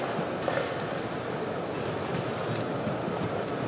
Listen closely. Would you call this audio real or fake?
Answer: real